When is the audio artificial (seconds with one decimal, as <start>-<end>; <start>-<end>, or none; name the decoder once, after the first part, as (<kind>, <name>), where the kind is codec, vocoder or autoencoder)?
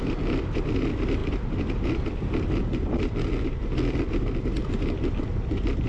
none